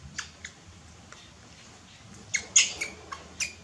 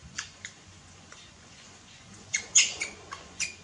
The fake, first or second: second